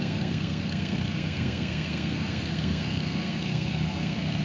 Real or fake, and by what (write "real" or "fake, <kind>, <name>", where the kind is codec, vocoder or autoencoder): fake, codec, SNAC